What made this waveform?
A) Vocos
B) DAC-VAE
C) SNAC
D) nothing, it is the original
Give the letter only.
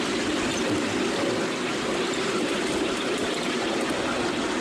D